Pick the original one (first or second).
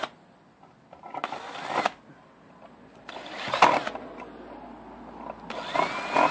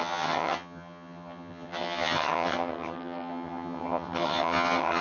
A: first